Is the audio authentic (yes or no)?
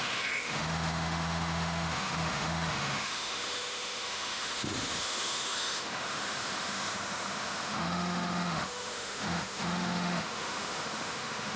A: no